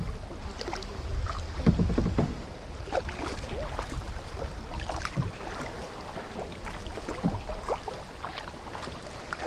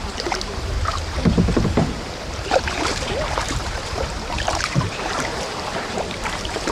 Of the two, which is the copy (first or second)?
second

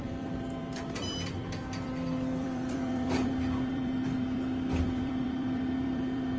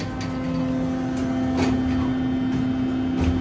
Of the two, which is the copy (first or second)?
first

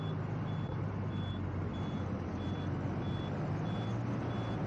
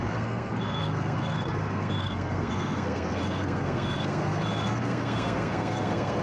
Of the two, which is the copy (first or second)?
second